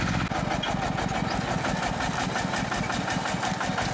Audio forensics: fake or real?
real